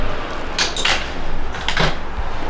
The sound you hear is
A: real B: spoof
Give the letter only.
A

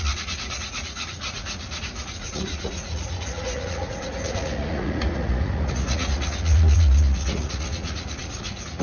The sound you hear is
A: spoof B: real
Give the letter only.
A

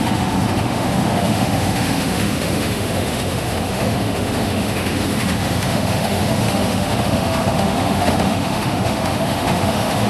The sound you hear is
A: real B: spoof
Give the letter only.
B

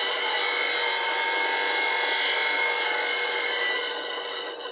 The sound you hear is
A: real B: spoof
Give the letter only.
A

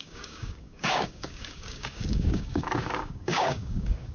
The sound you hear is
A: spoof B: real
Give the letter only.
A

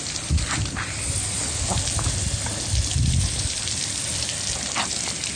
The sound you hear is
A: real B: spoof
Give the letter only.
A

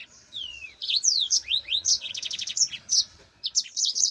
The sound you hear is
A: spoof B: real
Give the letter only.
A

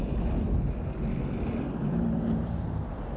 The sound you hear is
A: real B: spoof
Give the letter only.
B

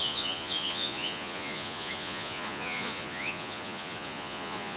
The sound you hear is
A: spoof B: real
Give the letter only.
A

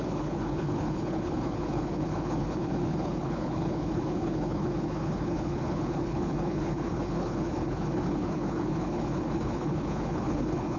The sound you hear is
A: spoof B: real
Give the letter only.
A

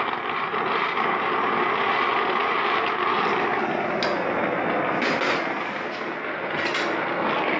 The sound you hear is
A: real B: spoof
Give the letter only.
A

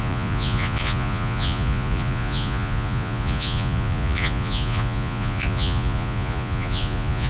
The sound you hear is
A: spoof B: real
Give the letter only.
A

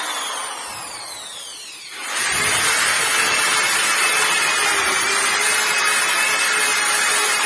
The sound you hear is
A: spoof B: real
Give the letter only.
B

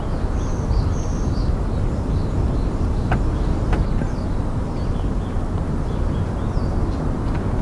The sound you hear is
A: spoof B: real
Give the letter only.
B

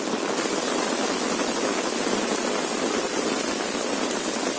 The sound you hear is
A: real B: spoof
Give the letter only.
A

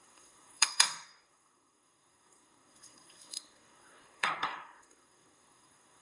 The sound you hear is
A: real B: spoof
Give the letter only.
B